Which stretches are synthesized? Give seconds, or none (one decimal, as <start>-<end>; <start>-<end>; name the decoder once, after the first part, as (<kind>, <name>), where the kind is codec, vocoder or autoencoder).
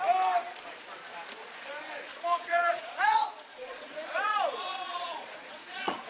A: 2.1-6.1 (vocoder, Vocos)